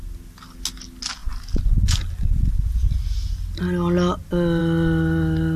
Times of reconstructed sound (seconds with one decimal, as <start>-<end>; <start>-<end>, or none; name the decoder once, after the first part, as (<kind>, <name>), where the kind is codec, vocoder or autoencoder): none